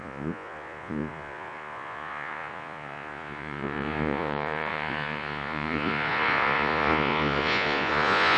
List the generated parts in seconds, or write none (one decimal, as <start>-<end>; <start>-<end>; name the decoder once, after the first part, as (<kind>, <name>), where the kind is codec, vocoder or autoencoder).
0.0-8.4 (vocoder, Vocos)